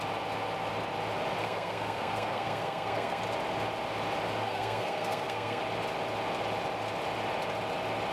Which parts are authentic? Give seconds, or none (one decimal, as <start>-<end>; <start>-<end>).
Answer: 0.0-1.4; 3.2-4.4; 5.6-8.1